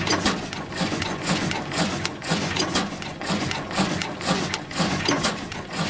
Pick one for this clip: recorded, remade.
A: remade